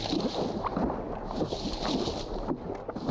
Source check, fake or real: real